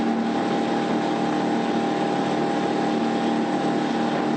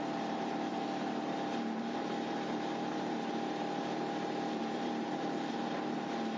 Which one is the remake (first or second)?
second